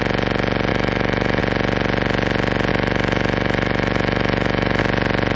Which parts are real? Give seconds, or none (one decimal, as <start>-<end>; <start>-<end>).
0.0-0.7; 1.4-2.7; 4.8-5.4